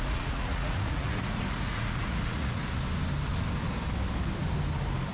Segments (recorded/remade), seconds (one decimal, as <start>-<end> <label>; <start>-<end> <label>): 0.0-2.6 remade; 2.6-5.1 recorded